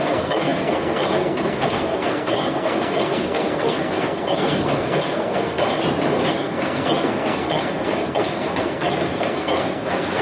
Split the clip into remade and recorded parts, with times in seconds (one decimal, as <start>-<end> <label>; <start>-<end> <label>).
0.0-5.7 remade; 5.7-6.3 recorded; 6.3-10.2 remade